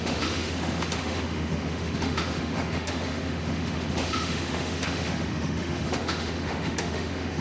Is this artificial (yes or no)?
yes